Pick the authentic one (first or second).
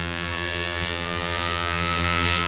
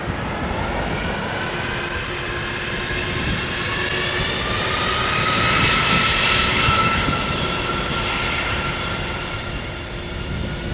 second